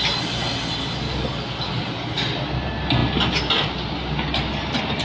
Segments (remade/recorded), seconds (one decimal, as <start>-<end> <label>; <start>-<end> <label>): 0.0-4.3 recorded; 4.3-5.0 remade